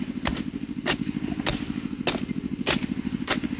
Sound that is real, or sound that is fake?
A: real